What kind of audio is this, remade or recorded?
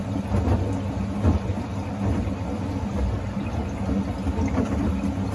recorded